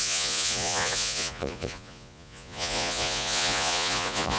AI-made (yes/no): yes